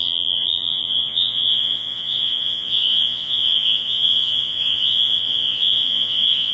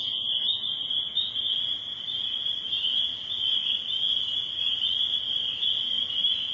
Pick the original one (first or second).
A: second